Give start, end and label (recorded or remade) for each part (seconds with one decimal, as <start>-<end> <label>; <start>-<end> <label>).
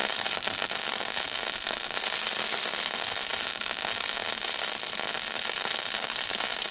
0.0-0.8 remade; 0.8-6.7 recorded